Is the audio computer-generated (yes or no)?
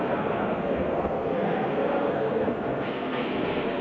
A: yes